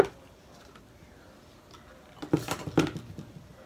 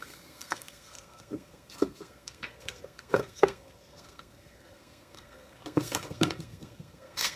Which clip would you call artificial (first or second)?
second